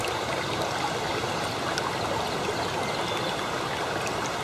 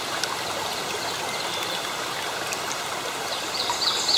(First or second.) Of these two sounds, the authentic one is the first